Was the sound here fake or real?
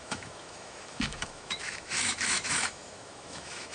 fake